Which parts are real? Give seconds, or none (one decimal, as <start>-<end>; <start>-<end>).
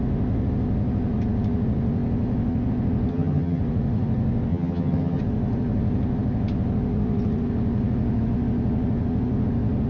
0.0-3.1; 3.6-4.5; 5.2-9.9